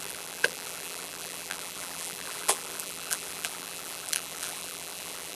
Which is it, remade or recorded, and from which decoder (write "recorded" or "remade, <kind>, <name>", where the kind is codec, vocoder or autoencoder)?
remade, vocoder, BigVGAN v2